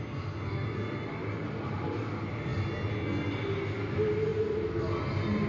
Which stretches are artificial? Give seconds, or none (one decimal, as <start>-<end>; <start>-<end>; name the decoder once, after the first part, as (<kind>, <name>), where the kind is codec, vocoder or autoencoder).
1.2-2.1 (vocoder, BigVGAN v2)